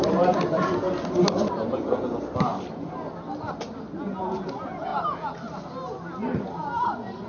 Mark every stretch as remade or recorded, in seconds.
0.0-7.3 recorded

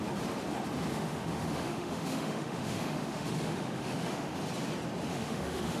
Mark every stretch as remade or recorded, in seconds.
0.0-0.9 recorded; 0.9-4.4 remade; 4.4-5.1 recorded; 5.1-5.8 remade

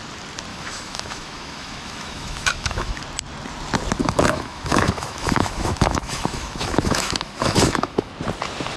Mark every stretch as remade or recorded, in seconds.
0.0-0.5 recorded; 0.5-3.0 remade; 3.0-4.0 recorded; 4.0-8.1 remade; 8.1-8.8 recorded

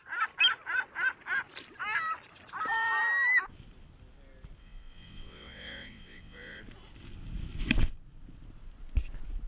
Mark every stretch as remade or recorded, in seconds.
0.0-4.6 recorded; 4.6-6.6 remade; 6.6-9.5 recorded

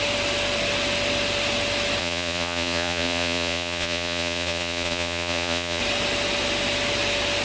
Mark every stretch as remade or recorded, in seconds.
0.0-2.0 recorded; 2.0-5.8 remade; 5.8-7.4 recorded

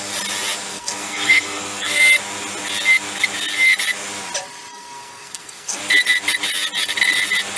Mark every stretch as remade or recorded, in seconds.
0.0-0.7 recorded; 0.7-2.0 remade; 2.0-4.7 recorded; 4.7-5.8 remade; 5.8-7.6 recorded